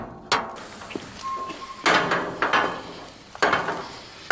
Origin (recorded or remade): recorded